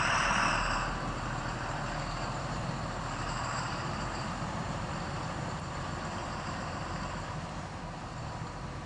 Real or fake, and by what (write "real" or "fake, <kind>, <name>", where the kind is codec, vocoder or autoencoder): fake, vocoder, BigVGAN v2